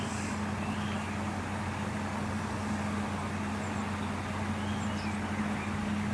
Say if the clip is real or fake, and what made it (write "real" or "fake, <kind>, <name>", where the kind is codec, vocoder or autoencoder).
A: real